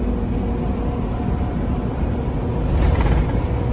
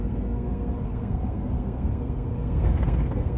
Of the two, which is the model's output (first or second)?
second